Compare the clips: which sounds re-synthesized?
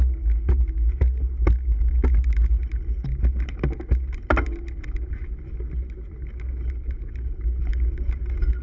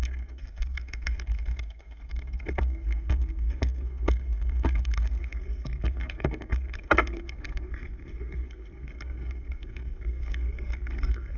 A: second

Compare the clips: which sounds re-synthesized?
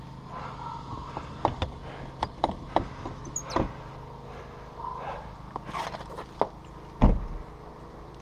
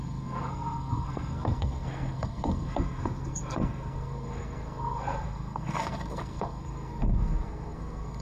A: second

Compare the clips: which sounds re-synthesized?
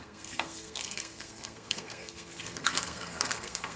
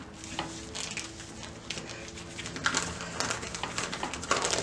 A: first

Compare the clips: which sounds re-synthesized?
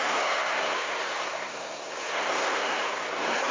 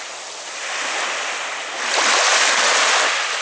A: first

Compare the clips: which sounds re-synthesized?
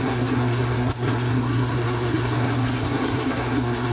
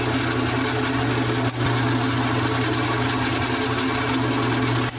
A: first